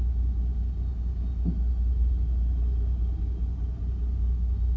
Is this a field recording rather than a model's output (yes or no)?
yes